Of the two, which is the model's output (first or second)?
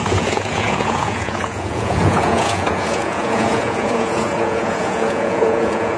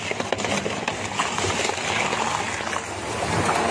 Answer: first